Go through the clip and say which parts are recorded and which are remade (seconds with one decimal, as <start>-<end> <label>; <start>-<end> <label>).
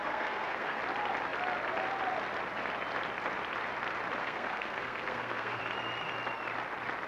0.0-0.8 remade; 0.8-4.2 recorded; 4.2-5.6 remade; 5.6-7.1 recorded